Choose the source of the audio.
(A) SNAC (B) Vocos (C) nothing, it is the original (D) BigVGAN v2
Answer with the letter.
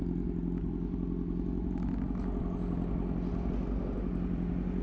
C